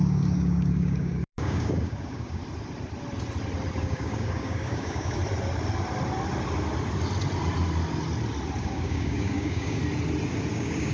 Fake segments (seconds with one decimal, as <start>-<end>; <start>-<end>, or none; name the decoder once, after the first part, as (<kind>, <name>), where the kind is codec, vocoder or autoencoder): 0.0-2.4 (codec, DAC); 3.8-5.2; 8.6-9.8; 10.5-10.9